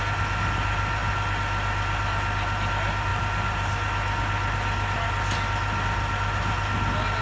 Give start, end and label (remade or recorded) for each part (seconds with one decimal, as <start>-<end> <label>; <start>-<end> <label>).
0.0-7.2 recorded